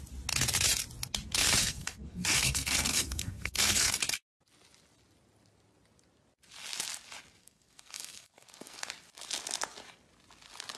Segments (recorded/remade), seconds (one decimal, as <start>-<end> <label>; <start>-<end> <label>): 0.0-1.6 recorded; 1.6-3.9 remade; 3.9-7.4 recorded; 7.4-8.9 remade; 8.9-10.8 recorded